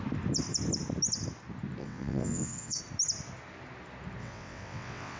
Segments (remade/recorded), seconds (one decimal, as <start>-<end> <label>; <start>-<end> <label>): 0.0-1.8 recorded; 1.8-2.8 remade; 2.8-4.2 recorded; 4.2-5.2 remade